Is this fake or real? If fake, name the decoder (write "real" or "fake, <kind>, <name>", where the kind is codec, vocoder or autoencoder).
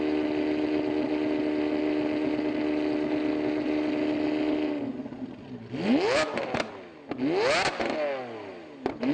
real